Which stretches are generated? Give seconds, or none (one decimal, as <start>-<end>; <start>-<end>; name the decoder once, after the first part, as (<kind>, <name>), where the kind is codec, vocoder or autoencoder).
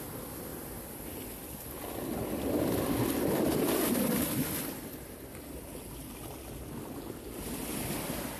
none